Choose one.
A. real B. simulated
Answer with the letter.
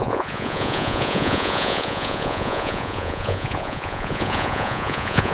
B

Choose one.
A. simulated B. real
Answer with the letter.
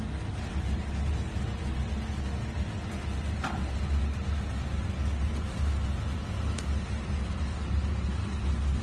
B